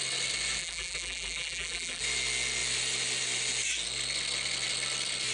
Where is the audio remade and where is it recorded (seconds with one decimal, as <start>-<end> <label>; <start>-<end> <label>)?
0.0-0.6 recorded; 0.6-2.0 remade; 2.0-5.3 recorded